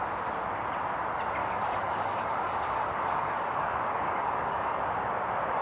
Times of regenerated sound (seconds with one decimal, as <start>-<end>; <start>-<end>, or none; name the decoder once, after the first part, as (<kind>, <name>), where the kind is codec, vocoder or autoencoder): 1.4-4.8 (codec, DAC)